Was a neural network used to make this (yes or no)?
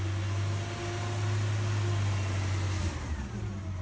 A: no